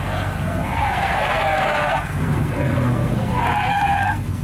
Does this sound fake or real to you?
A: fake